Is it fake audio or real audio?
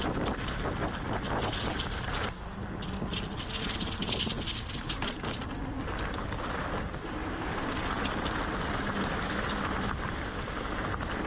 real